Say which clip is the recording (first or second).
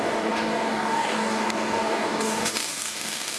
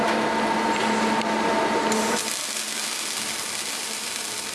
second